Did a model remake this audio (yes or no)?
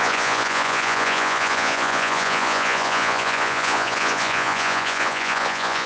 yes